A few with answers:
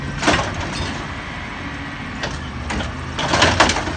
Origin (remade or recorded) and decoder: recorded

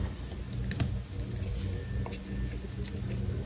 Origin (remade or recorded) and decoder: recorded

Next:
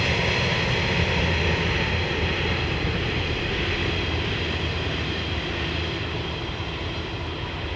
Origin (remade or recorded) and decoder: recorded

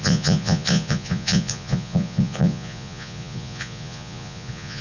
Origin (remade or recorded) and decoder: remade, vocoder, Vocos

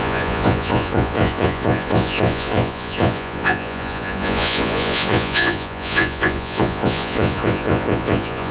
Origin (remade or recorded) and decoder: remade, vocoder, Vocos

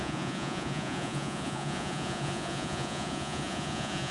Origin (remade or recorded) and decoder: remade, vocoder, Vocos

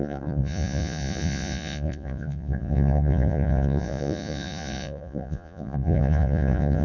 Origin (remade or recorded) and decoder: remade, vocoder, Vocos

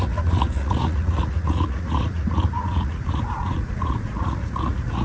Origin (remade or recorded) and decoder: remade, vocoder, Vocos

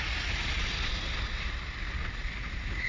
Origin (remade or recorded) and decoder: recorded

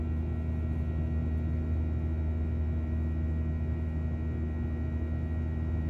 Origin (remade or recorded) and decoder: recorded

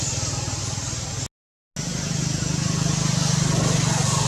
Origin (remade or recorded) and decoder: recorded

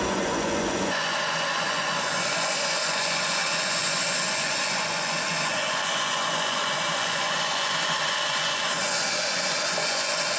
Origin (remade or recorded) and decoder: remade, vocoder, Vocos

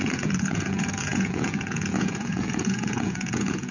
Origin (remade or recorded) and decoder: remade, vocoder, Vocos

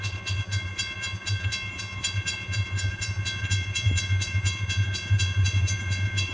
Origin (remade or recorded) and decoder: remade, vocoder, Vocos